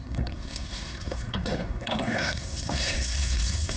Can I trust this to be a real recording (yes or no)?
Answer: no